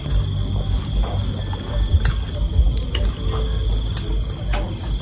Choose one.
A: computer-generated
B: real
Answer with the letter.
B